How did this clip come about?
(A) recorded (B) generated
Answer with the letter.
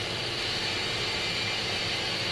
A